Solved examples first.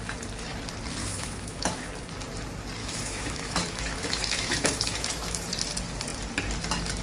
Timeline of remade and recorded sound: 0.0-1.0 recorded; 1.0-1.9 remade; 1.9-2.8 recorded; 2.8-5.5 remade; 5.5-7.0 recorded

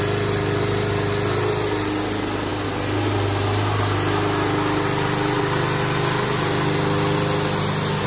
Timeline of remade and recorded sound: 0.0-8.1 recorded

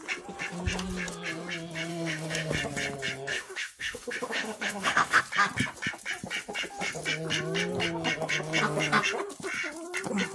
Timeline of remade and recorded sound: 0.0-1.9 recorded; 1.9-2.5 remade; 2.5-3.3 recorded; 3.3-5.2 remade; 5.2-10.3 recorded

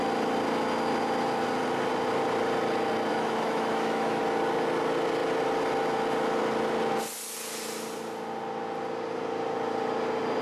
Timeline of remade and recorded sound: 0.0-3.1 recorded; 3.1-4.2 remade; 4.2-10.4 recorded

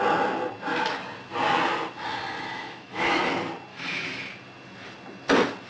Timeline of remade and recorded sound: 0.0-2.5 recorded; 2.5-3.2 remade; 3.2-3.7 recorded; 3.7-4.2 remade; 4.2-5.7 recorded